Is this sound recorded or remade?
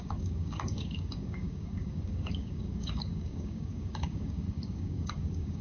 remade